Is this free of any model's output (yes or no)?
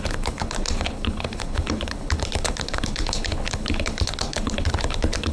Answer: no